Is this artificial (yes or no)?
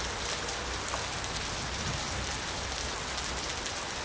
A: no